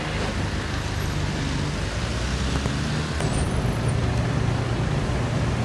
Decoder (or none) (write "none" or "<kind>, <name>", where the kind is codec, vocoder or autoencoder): none